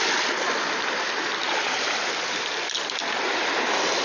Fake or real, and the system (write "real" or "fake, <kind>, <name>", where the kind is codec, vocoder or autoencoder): real